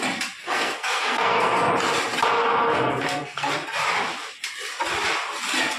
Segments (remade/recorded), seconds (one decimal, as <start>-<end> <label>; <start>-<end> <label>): 0.0-0.4 recorded; 0.4-1.7 remade; 1.7-2.4 recorded; 2.4-3.5 remade; 3.5-5.8 recorded